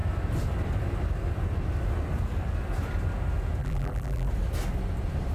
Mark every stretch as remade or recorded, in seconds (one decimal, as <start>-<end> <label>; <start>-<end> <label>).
0.0-3.6 recorded; 3.6-4.3 remade; 4.3-5.3 recorded

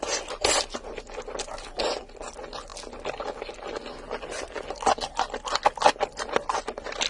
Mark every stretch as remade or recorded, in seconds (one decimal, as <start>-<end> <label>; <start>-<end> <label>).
0.0-7.1 recorded

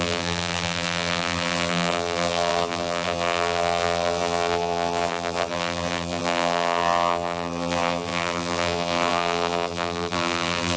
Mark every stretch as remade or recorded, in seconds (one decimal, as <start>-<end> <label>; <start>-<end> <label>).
0.0-10.8 remade